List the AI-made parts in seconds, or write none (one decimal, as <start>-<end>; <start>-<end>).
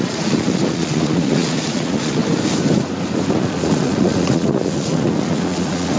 0.0-2.2; 3.3-6.0